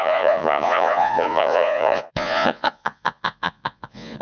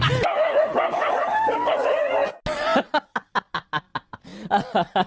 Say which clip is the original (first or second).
second